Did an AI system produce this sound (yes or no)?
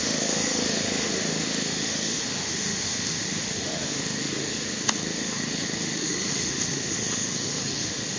yes